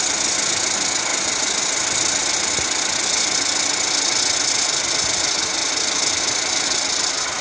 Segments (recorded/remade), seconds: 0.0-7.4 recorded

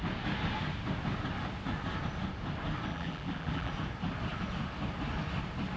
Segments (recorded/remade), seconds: 0.0-2.9 recorded; 2.9-3.7 remade; 3.7-5.8 recorded

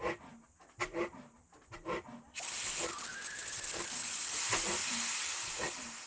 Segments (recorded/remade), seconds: 0.0-4.8 recorded; 4.8-5.6 remade; 5.6-6.1 recorded

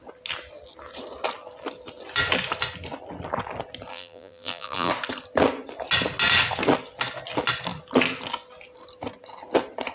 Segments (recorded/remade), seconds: 0.0-3.9 recorded; 3.9-4.9 remade; 4.9-9.9 recorded

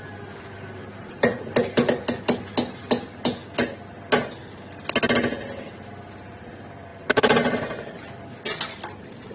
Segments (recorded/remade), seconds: 0.0-0.8 recorded; 0.8-1.5 remade; 1.5-6.9 recorded; 6.9-8.1 remade; 8.1-9.3 recorded